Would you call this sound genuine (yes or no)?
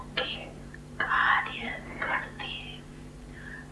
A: no